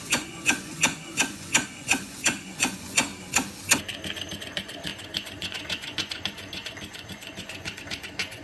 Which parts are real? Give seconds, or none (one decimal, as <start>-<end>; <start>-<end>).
3.1-4.4